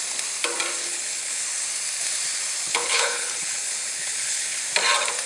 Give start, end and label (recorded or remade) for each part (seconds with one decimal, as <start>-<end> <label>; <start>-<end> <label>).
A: 0.0-0.8 recorded; 0.8-1.4 remade; 1.4-2.7 recorded; 2.7-4.6 remade; 4.6-5.3 recorded